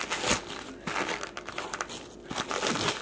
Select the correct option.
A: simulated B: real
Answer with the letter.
B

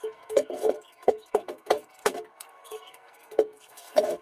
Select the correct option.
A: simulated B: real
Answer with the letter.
A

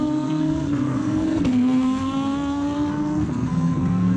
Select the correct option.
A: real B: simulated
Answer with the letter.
B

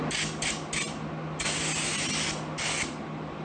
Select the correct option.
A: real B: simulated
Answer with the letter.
A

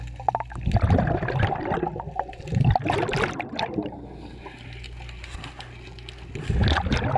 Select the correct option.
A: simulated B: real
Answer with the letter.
B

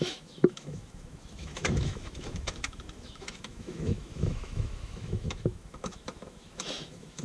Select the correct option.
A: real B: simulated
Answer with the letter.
B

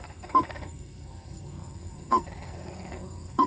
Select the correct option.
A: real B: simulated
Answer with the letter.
B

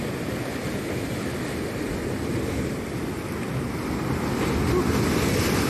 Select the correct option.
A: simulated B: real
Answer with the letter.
B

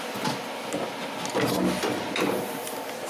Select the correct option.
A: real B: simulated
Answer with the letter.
A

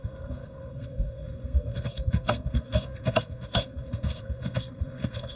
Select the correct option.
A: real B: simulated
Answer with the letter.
B